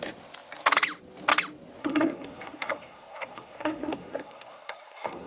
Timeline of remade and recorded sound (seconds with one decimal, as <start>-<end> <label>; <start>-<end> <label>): 0.0-1.8 recorded; 1.8-5.3 remade